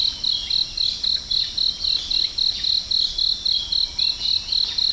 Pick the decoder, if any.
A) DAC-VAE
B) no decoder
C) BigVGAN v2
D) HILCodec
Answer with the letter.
B